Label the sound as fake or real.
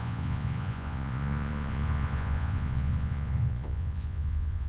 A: fake